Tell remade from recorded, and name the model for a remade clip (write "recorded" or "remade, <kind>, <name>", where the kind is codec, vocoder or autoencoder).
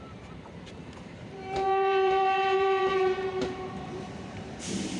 remade, vocoder, BigVGAN v2